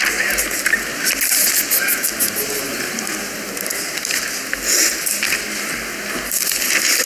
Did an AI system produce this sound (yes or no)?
no